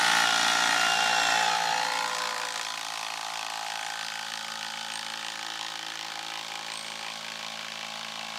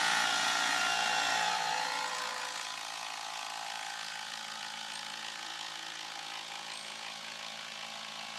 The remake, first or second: second